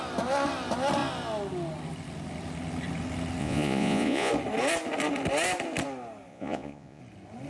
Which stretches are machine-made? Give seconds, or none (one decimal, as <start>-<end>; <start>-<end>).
3.4-4.3; 6.3-7.0